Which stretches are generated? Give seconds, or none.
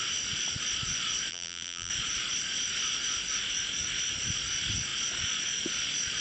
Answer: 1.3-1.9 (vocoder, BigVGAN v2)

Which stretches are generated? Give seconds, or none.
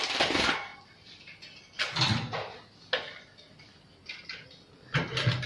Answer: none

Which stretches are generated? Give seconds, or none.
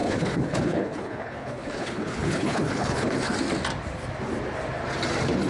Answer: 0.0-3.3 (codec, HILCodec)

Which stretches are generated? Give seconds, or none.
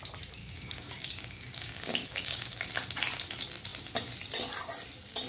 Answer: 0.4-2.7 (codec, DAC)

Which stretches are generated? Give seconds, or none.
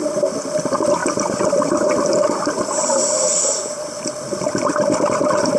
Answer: 1.0-4.4 (vocoder, BigVGAN v2)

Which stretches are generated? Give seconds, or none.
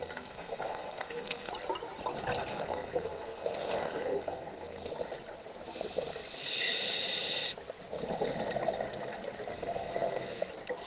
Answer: 0.0-1.5 (codec, SNAC); 2.5-4.9; 9.5-10.4